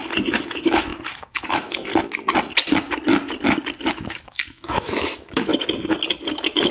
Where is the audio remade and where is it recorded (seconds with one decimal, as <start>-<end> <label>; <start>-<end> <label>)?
0.0-0.5 recorded; 0.5-1.9 remade; 1.9-3.9 recorded; 3.9-5.5 remade; 5.5-6.3 recorded; 6.3-6.7 remade